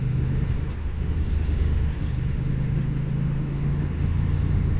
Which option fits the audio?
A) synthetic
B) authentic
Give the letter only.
A